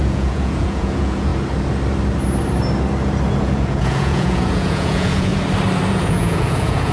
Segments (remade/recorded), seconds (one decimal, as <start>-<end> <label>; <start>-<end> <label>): 0.0-1.3 remade; 1.3-3.4 recorded; 3.4-5.3 remade; 5.3-5.9 recorded; 5.9-6.9 remade